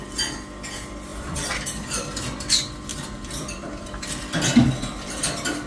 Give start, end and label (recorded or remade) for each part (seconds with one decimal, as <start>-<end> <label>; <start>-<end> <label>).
0.0-1.1 recorded; 1.1-2.0 remade; 2.0-2.9 recorded; 2.9-4.1 remade; 4.1-5.7 recorded